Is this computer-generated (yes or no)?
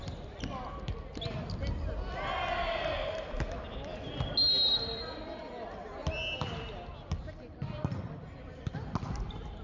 no